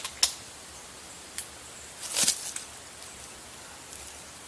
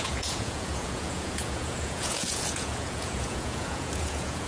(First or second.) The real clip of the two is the first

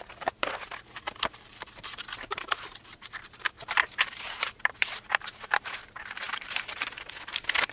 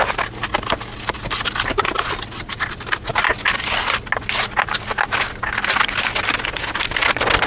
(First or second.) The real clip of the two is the second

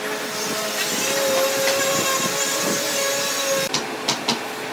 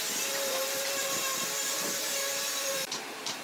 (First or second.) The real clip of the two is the first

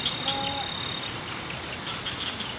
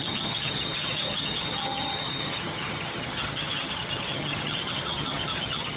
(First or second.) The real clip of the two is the first